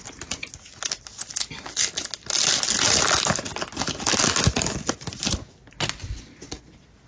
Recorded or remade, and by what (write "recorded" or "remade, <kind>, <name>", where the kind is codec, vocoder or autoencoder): recorded